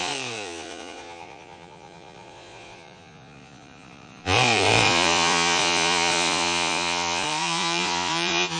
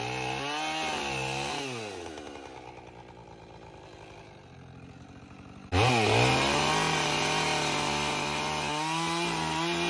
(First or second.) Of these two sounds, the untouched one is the second